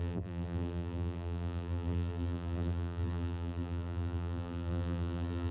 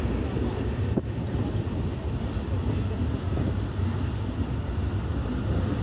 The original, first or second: second